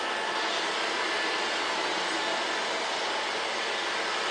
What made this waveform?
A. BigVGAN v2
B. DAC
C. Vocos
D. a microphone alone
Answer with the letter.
D